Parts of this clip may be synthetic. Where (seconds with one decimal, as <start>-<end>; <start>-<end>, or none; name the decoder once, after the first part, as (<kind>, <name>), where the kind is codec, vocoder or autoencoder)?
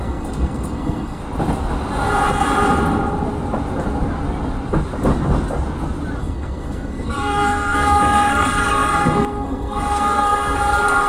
0.0-1.2 (codec, SNAC); 6.2-11.1